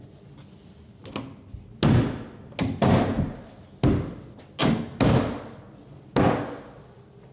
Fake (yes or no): no